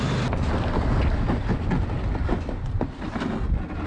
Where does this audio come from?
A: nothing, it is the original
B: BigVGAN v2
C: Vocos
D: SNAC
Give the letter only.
A